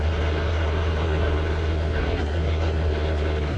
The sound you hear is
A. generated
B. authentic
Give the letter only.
A